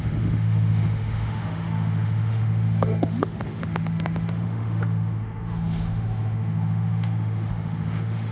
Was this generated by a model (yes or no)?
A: yes